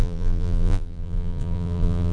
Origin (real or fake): fake